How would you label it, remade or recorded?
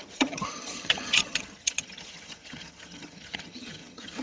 remade